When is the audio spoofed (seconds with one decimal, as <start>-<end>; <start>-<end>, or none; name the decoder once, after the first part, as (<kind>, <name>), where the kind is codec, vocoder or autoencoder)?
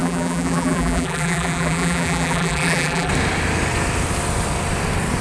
0.0-3.1 (vocoder, BigVGAN v2)